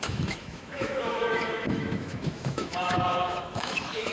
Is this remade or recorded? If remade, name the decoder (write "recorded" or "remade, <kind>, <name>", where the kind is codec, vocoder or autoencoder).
remade, autoencoder, DAC-VAE